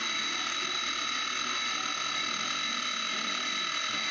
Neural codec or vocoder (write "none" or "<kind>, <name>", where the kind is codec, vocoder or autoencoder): none